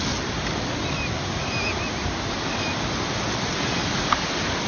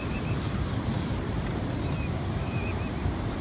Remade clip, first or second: second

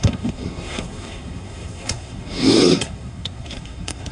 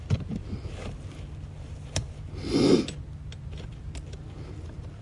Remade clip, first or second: first